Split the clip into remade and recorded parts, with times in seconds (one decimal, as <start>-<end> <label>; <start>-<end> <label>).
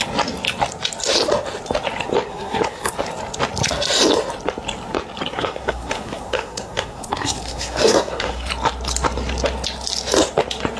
0.0-2.3 recorded; 2.3-2.9 remade; 2.9-5.3 recorded; 5.3-8.5 remade; 8.5-10.8 recorded